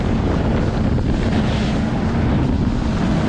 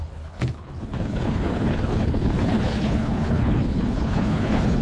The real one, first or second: first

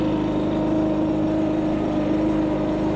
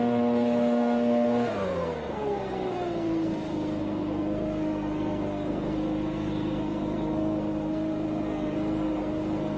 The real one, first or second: first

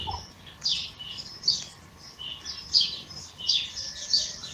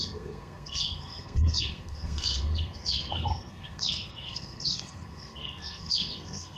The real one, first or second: first